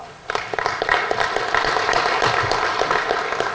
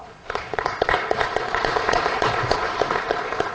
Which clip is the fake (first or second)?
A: second